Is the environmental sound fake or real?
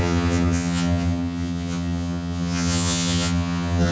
fake